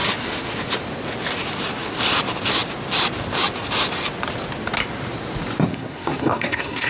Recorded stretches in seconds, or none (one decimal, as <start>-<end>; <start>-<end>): 0.0-5.7